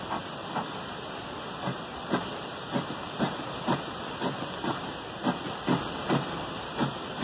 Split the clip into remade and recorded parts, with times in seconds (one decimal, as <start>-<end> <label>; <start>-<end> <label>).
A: 0.0-7.2 recorded